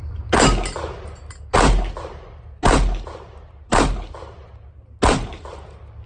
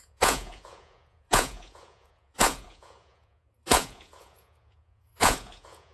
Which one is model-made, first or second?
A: second